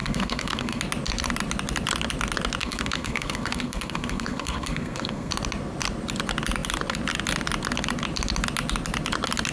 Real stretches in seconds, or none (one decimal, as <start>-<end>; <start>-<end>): 0.8-2.6; 5.3-9.5